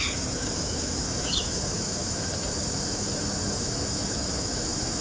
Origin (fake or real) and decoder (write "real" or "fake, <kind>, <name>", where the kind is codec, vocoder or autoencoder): fake, autoencoder, DAC-VAE